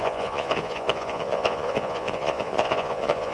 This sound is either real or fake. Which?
fake